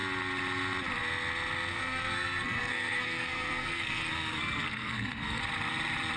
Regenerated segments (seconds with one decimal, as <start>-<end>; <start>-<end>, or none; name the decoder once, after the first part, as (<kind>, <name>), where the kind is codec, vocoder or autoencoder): 1.7-5.4 (codec, SNAC)